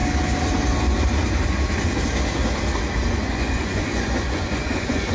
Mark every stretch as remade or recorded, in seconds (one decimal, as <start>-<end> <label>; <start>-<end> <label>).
0.0-3.1 recorded; 3.1-5.1 remade